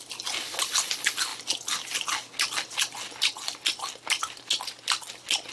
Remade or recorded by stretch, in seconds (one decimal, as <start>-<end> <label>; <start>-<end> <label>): 0.0-5.5 recorded